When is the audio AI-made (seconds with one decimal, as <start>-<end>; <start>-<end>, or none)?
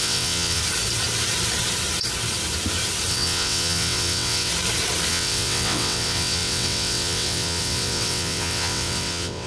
0.0-0.6; 3.1-4.5; 5.1-9.5